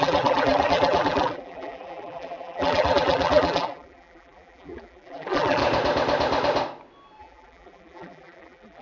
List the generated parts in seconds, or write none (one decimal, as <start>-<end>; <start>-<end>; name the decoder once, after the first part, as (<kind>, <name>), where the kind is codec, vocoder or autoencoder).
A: 0.0-5.6 (vocoder, BigVGAN v2); 7.2-8.8